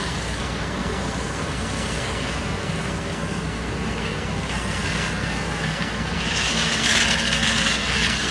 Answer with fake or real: fake